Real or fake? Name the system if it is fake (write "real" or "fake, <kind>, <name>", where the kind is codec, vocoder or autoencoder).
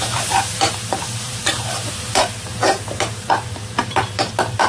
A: fake, vocoder, BigVGAN v2